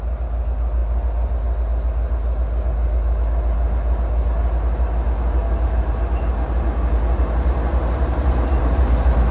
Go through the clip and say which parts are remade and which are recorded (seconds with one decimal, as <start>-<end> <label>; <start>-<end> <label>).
0.0-9.3 recorded